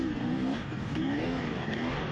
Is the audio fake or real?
fake